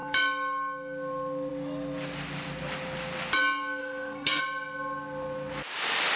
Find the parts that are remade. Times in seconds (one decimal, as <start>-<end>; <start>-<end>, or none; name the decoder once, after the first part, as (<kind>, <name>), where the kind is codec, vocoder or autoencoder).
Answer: 3.8-4.4 (codec, SNAC)